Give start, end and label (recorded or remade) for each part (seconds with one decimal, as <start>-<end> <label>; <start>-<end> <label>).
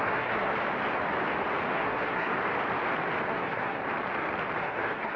0.0-0.5 remade; 0.5-1.7 recorded; 1.7-2.3 remade; 2.3-3.3 recorded; 3.3-3.8 remade; 3.8-4.6 recorded; 4.6-5.2 remade